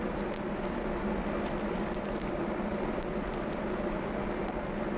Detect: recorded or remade recorded